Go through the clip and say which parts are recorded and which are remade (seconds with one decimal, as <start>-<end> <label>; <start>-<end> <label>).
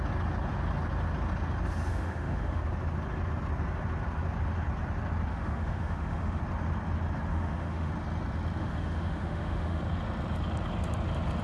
0.0-1.9 recorded; 1.9-2.6 remade; 2.6-5.3 recorded; 5.3-6.4 remade; 6.4-7.3 recorded; 7.3-7.9 remade; 7.9-8.6 recorded; 8.6-9.8 remade; 9.8-11.4 recorded